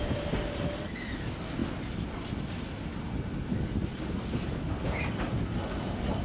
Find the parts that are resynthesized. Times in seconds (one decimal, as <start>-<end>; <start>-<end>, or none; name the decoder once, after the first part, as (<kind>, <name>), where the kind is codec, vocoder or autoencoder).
none

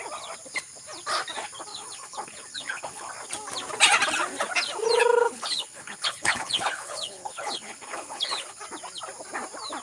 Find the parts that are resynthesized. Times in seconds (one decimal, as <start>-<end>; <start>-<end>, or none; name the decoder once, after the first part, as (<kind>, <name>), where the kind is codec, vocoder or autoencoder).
1.7-3.1 (codec, HILCodec); 5.1-8.6